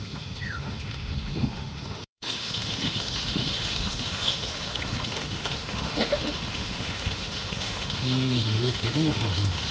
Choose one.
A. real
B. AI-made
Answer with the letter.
B